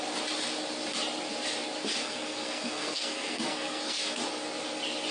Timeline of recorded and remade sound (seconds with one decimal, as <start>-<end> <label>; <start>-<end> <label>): 0.0-1.9 recorded; 1.9-4.2 remade; 4.2-5.1 recorded

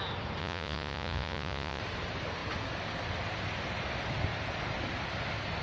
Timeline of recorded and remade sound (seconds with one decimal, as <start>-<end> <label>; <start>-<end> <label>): 0.0-0.4 recorded; 0.4-1.8 remade; 1.8-5.6 recorded

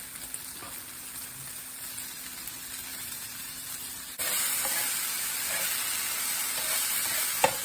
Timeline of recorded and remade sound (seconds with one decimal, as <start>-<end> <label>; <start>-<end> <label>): 0.0-2.9 recorded; 2.9-5.0 remade; 5.0-7.6 recorded

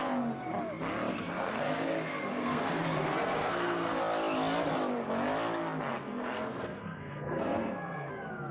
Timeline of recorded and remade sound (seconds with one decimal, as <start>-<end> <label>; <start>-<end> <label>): 0.0-1.1 recorded; 1.1-4.0 remade; 4.0-5.9 recorded; 5.9-8.1 remade; 8.1-8.5 recorded